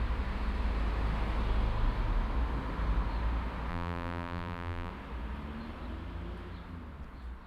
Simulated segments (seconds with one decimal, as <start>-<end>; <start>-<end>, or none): 3.7-4.9